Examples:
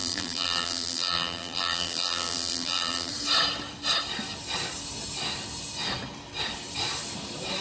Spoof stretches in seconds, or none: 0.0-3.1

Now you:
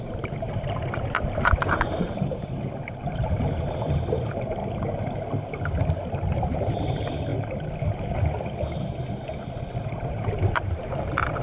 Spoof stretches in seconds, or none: 0.0-4.6; 6.1-7.3; 9.8-11.4